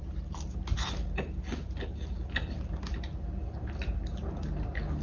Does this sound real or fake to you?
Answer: real